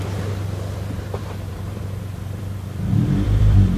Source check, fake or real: fake